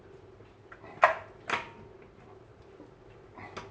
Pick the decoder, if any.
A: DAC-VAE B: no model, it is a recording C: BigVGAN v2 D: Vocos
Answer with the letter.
B